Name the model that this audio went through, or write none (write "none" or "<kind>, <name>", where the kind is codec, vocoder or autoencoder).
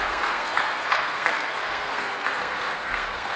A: codec, SNAC